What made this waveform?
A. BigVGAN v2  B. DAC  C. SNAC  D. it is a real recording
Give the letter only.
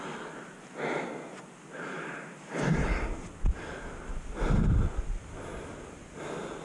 D